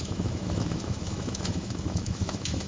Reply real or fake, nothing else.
fake